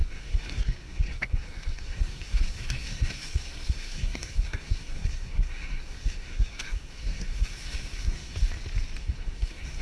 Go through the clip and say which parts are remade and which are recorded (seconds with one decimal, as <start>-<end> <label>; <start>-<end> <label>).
0.0-8.4 remade; 8.4-9.0 recorded; 9.0-9.8 remade